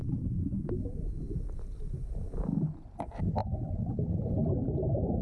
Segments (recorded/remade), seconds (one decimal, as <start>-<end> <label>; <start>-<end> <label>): 0.0-5.2 recorded